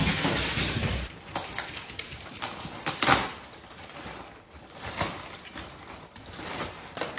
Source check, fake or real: real